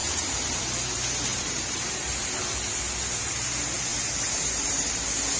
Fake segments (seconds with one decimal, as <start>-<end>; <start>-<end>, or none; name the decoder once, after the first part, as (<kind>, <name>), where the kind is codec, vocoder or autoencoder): 0.0-0.6 (vocoder, BigVGAN v2); 1.3-2.3; 3.9-4.9

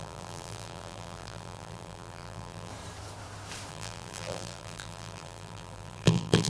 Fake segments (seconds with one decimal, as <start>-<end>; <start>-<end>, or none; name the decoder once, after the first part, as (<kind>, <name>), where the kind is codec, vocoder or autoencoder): 0.0-2.7 (vocoder, BigVGAN v2); 3.7-6.5

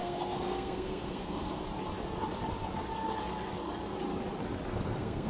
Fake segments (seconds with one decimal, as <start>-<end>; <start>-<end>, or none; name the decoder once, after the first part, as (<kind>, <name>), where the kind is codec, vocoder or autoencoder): 0.0-1.6 (codec, SNAC); 4.7-5.3

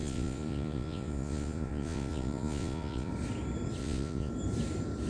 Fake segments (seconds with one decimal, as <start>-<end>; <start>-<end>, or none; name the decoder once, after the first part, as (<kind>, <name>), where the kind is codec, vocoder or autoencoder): 0.0-3.1 (vocoder, Vocos); 3.8-4.3

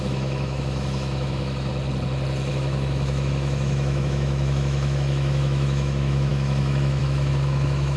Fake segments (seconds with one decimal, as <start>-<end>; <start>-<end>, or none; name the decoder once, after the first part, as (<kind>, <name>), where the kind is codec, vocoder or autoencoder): 0.0-1.7 (autoencoder, DAC-VAE); 2.5-8.0

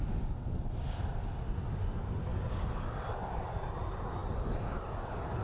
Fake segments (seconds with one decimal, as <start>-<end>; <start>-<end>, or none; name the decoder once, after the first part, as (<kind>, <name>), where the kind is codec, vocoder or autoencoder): none

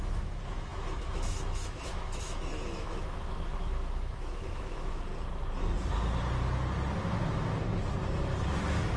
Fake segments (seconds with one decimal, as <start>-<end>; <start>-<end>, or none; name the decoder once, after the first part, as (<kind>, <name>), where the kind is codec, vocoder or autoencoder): 0.0-5.1 (autoencoder, DAC-VAE)